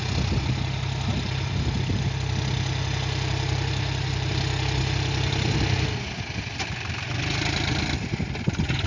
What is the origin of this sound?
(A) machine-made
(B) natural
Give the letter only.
B